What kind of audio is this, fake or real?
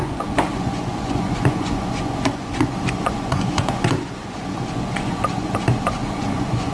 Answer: fake